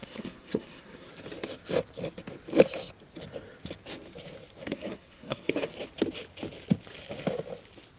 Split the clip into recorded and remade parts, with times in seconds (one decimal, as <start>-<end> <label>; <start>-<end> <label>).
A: 0.0-1.1 remade; 1.1-4.6 recorded; 4.6-5.7 remade; 5.7-8.0 recorded